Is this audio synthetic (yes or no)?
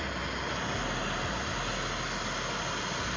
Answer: no